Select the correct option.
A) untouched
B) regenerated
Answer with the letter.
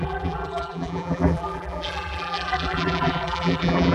B